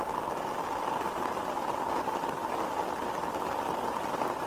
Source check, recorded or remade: remade